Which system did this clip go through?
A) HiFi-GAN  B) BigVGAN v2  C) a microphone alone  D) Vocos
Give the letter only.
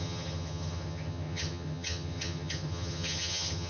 A